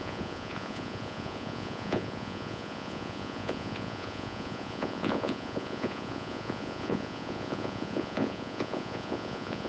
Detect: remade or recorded remade